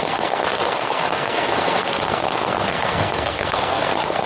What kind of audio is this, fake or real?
fake